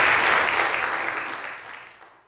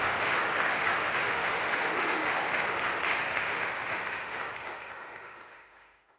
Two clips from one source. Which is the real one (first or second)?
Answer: first